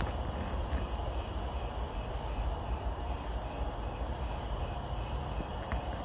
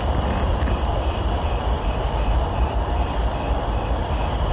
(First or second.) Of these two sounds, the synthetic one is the second